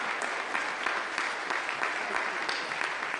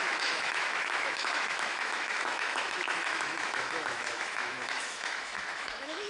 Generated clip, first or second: second